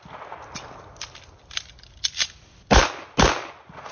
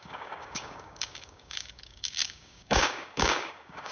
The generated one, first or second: second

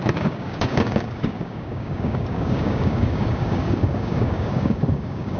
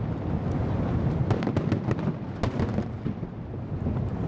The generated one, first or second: first